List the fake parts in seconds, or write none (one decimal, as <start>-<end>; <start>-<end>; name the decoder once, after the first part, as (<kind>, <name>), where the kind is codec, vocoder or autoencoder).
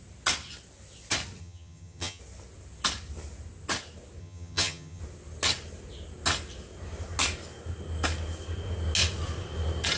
1.4-2.2 (vocoder, HiFi-GAN); 4.2-5.0